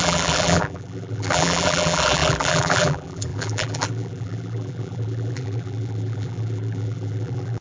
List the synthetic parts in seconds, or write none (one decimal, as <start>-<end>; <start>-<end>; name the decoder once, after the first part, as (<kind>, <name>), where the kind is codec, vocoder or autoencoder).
0.0-7.6 (vocoder, BigVGAN v2)